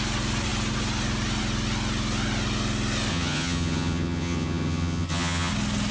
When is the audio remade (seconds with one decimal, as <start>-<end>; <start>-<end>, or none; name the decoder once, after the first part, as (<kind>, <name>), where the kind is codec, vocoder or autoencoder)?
3.1-5.5 (vocoder, HiFi-GAN)